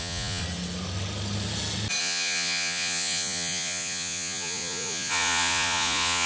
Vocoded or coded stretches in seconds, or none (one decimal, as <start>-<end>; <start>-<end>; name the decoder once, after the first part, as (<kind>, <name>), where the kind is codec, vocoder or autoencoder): 0.0-0.4 (vocoder, Vocos); 2.0-6.3